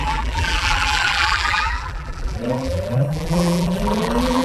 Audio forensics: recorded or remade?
remade